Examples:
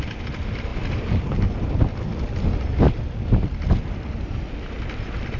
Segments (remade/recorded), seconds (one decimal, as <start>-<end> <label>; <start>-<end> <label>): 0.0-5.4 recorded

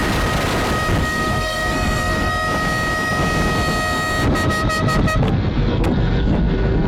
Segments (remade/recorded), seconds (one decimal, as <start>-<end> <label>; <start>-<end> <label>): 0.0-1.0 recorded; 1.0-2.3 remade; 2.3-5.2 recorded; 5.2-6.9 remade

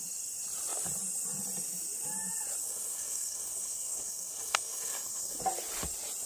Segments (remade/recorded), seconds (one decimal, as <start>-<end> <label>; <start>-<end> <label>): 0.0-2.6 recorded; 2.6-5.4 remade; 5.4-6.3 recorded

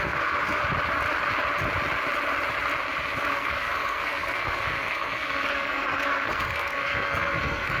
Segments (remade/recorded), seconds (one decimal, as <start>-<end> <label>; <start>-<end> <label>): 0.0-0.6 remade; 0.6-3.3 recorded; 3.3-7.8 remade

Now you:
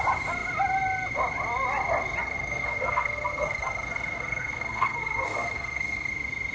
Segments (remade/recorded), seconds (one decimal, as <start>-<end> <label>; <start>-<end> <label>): 0.0-2.2 recorded; 2.2-6.1 remade; 6.1-6.5 recorded

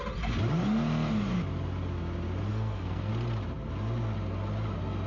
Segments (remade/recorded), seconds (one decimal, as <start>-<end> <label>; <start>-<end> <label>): 0.0-2.5 recorded; 2.5-3.1 remade; 3.1-5.1 recorded